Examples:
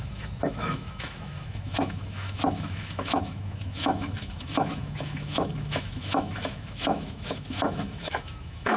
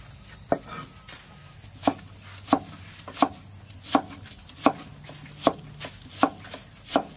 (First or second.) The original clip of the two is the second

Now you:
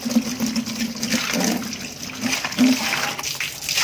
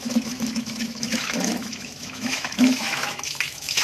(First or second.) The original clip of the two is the first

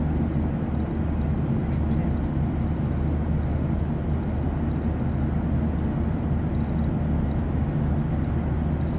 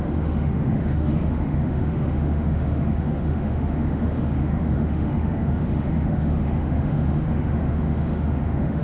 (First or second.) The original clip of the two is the first